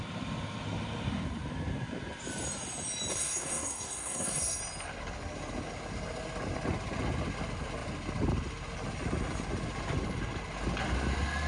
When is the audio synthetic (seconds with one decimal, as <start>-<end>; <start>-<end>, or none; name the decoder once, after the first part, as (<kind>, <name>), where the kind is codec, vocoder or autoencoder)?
3.1-4.6 (codec, SNAC)